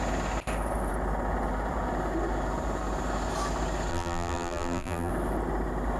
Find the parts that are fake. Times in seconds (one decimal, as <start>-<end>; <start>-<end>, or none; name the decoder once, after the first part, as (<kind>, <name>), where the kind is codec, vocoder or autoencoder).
3.9-5.1 (vocoder, BigVGAN v2)